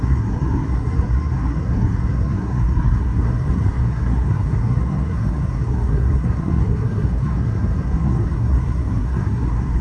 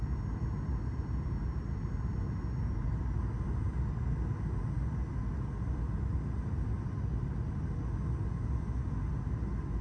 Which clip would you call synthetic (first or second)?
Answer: first